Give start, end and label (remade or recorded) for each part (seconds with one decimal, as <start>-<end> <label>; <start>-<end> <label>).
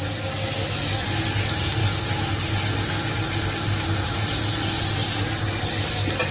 0.0-6.3 recorded